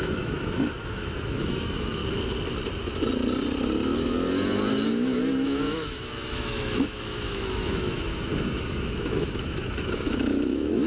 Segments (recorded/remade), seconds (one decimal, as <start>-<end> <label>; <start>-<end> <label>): 0.0-2.0 remade; 2.0-4.9 recorded; 4.9-8.3 remade; 8.3-8.8 recorded; 8.8-10.9 remade